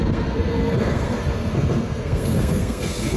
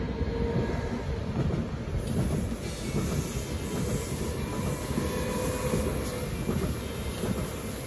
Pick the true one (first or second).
second